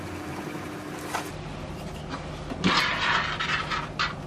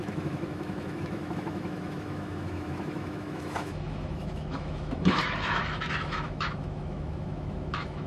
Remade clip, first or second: second